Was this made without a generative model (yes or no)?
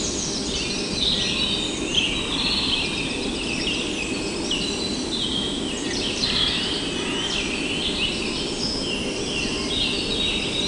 yes